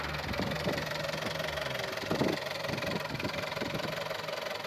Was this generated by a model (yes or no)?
no